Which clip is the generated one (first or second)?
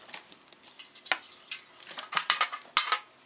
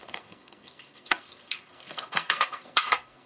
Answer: second